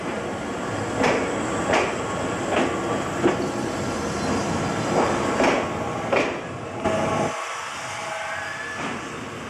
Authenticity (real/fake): real